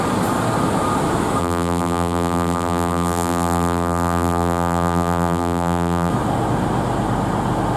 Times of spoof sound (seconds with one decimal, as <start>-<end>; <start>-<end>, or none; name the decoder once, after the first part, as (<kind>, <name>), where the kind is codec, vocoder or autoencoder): 1.4-6.1 (vocoder, BigVGAN v2)